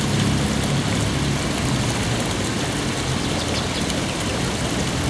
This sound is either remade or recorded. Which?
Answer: recorded